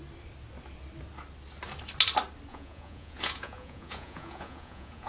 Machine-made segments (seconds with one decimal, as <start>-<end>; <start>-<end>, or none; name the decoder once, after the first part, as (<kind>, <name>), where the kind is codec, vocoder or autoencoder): 2.5-5.1 (vocoder, Vocos)